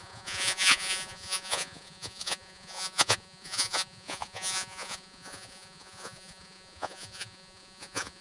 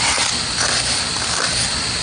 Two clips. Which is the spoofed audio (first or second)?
first